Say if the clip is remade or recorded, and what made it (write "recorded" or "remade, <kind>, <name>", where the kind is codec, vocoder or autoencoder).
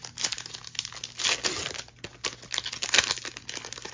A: recorded